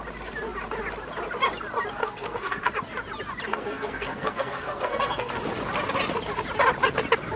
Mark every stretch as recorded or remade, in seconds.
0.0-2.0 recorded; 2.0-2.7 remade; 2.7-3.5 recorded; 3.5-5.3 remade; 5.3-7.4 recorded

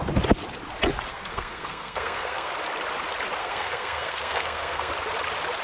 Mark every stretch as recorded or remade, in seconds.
0.0-1.1 recorded; 1.1-2.5 remade; 2.5-3.4 recorded; 3.4-4.9 remade; 4.9-5.6 recorded

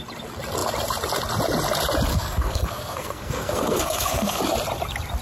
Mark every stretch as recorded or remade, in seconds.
0.0-2.1 recorded; 2.1-4.4 remade; 4.4-5.2 recorded